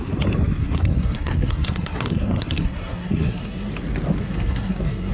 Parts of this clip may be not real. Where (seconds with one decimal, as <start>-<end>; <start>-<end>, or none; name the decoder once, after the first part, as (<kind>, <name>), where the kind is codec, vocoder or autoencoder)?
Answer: 0.6-3.7 (codec, SNAC); 4.2-5.1